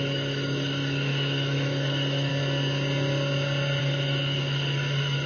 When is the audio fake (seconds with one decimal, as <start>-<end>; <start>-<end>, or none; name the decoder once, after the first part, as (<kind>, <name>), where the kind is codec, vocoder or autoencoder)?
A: 0.0-2.3 (autoencoder, DAC-VAE); 3.8-5.3